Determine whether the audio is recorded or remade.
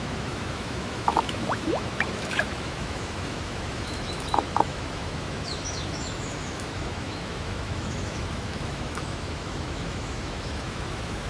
remade